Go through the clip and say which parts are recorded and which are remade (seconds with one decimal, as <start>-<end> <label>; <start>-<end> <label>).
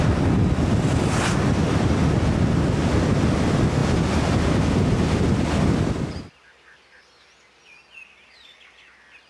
0.0-9.3 recorded